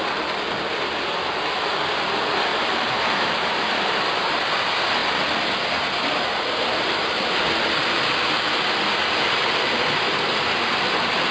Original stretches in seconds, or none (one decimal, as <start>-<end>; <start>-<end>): 0.0-2.5; 4.5-11.3